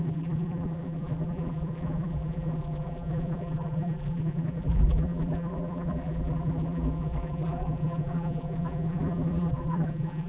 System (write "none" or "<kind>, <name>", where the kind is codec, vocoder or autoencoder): vocoder, BigVGAN v2